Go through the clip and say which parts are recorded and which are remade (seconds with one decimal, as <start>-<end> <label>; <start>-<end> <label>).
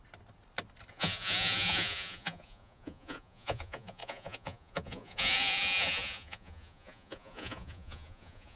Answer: 0.0-0.9 recorded; 0.9-8.6 remade